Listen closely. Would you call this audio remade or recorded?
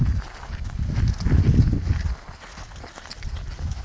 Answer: recorded